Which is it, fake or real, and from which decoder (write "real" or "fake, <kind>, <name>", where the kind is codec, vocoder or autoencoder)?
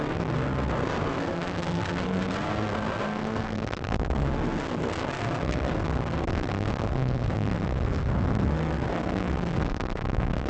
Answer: fake, codec, SNAC